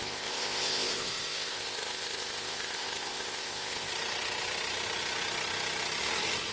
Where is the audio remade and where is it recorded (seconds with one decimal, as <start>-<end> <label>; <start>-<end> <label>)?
0.0-3.9 remade; 3.9-6.5 recorded